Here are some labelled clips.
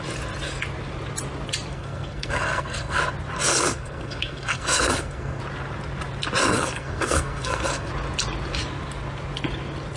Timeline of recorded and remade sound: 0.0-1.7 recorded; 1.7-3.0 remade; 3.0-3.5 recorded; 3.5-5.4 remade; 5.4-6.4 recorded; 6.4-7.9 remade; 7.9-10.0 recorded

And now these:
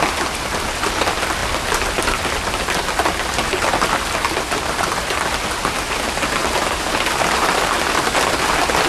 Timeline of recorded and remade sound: 0.0-8.9 recorded

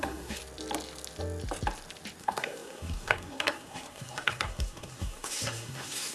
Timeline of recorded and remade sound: 0.0-0.4 remade; 0.4-2.2 recorded; 2.2-6.1 remade

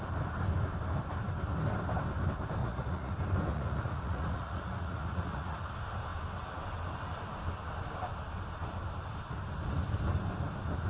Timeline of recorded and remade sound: 0.0-2.6 recorded; 2.6-3.1 remade; 3.1-3.5 recorded; 3.5-5.6 remade; 5.6-10.9 recorded

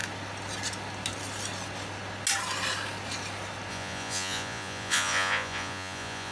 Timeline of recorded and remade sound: 0.0-3.7 recorded; 3.7-6.3 remade

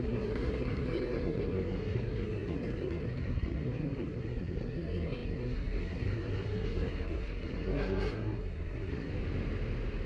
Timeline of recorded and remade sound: 0.0-9.1 remade; 9.1-10.1 recorded